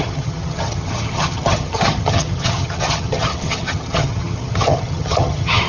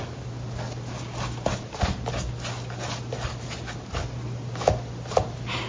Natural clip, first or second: second